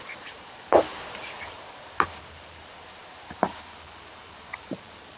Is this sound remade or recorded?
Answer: remade